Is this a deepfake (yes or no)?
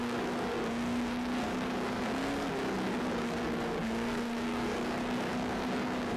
yes